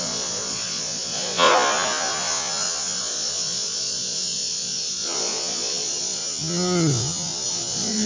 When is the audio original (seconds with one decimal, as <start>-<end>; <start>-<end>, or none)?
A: 1.5-3.0; 6.2-7.5